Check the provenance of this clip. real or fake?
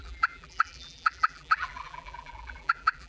fake